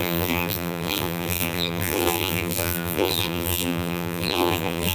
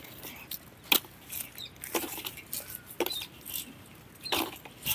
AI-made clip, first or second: first